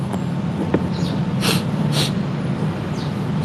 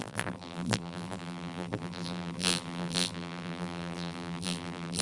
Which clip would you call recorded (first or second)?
first